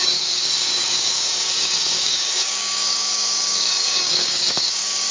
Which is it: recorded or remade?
remade